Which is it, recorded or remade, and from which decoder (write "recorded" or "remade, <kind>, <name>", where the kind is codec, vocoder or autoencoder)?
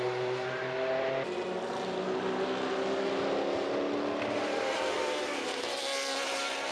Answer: recorded